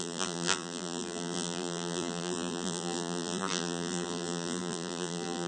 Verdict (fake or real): fake